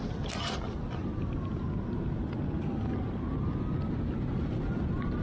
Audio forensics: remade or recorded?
recorded